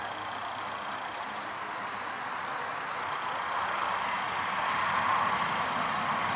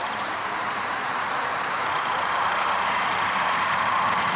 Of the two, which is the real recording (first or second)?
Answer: first